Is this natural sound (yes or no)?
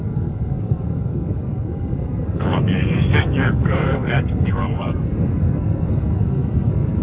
no